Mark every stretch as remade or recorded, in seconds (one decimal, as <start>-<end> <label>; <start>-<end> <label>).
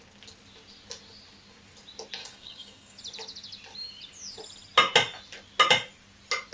0.0-2.2 recorded; 2.2-3.0 remade; 3.0-6.5 recorded